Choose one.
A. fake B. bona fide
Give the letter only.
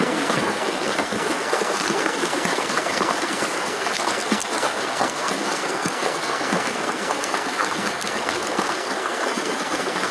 A